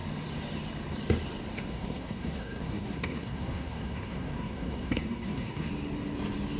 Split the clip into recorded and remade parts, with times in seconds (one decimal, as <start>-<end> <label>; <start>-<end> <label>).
0.0-1.7 recorded; 1.7-5.7 remade; 5.7-6.6 recorded